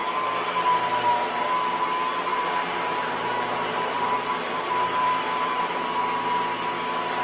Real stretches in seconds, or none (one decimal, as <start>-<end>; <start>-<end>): 0.0-2.3; 5.2-7.2